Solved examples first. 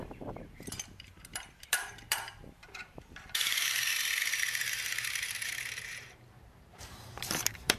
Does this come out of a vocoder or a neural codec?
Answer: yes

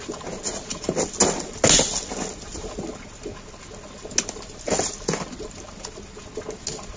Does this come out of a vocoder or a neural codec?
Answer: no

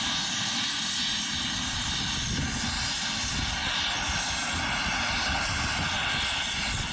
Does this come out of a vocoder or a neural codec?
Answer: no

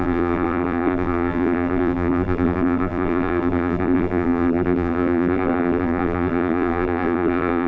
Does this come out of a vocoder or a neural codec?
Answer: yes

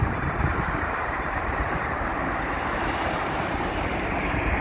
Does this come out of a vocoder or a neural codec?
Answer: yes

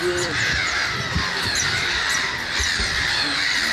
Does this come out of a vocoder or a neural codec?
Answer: yes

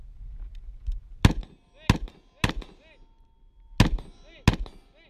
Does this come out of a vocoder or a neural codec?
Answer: no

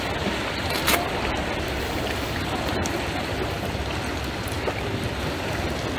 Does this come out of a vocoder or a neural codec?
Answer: no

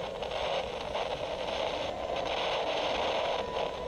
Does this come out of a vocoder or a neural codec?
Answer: no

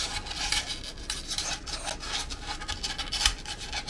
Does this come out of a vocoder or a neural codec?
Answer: no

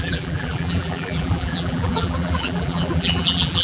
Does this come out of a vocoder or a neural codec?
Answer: yes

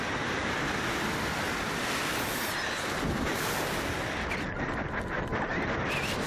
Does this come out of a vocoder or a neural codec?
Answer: no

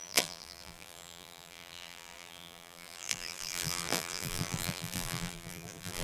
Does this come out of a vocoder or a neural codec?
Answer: yes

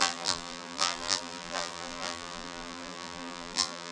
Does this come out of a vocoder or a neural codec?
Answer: yes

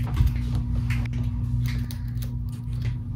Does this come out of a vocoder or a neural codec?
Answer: no